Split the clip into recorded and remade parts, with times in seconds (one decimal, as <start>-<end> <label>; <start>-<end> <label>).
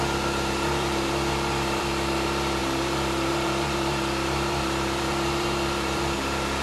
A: 0.0-6.6 remade